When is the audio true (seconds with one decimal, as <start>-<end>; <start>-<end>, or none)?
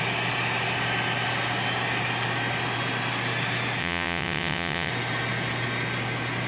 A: 0.0-3.8; 4.9-6.5